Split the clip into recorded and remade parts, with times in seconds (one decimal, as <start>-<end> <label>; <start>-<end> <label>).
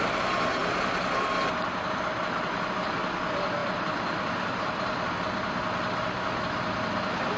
0.0-0.6 recorded; 0.6-2.1 remade; 2.1-3.6 recorded; 3.6-5.1 remade; 5.1-7.4 recorded